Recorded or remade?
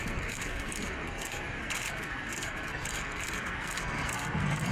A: remade